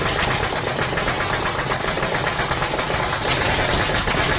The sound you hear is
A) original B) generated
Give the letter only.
A